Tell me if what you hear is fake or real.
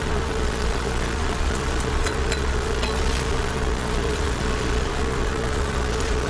fake